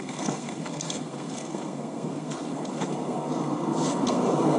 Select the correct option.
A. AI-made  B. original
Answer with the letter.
A